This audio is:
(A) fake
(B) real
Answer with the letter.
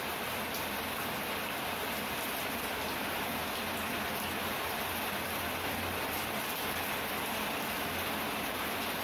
B